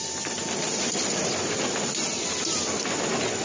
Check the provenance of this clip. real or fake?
real